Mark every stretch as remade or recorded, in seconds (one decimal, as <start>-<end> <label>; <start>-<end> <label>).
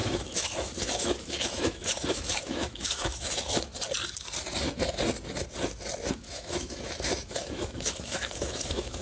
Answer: 0.0-3.7 remade; 3.7-6.1 recorded; 6.1-9.0 remade